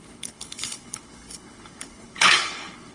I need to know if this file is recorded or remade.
remade